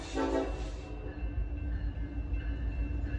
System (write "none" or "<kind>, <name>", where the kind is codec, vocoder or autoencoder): none